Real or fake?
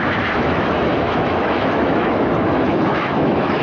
fake